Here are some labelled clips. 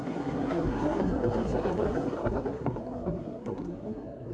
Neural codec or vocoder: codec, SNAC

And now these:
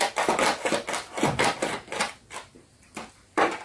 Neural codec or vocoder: none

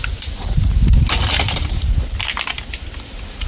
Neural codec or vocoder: none